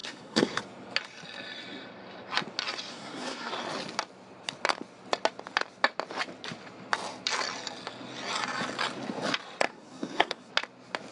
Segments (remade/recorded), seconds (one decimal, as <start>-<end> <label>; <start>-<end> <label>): 0.0-0.6 remade; 0.6-2.9 recorded; 2.9-3.5 remade; 3.5-9.7 recorded; 9.7-10.5 remade; 10.5-11.1 recorded